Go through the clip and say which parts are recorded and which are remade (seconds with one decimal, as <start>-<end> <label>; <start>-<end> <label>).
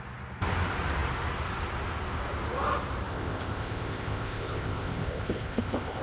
0.0-3.1 recorded; 3.1-6.0 remade